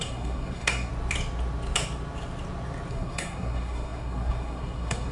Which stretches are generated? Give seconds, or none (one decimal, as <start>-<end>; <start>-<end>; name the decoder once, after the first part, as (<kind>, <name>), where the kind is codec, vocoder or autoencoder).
0.0-0.9 (codec, SNAC); 2.9-5.1